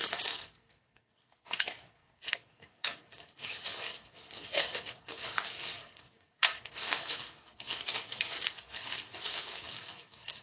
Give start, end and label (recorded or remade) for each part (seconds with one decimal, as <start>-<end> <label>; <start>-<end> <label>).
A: 0.0-10.4 remade